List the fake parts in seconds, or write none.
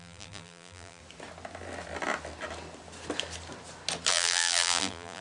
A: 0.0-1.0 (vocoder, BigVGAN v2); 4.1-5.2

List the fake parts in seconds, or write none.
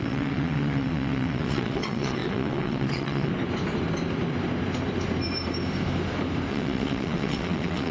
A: 0.0-3.3 (vocoder, WaveNeXt); 6.5-7.9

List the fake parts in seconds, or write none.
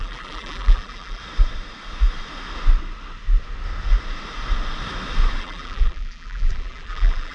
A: 0.0-1.2 (vocoder, BigVGAN v2); 5.4-7.3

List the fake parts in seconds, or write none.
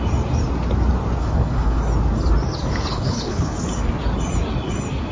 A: 1.2-1.8 (codec, HILCodec); 2.9-3.5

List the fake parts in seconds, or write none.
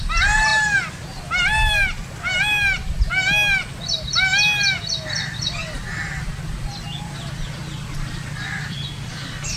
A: none